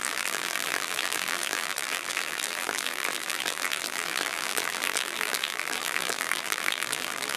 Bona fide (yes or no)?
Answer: no